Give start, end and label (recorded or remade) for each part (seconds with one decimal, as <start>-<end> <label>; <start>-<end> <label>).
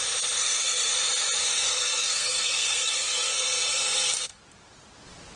0.0-0.4 recorded; 0.4-0.9 remade; 0.9-1.4 recorded; 1.4-4.4 remade; 4.4-5.4 recorded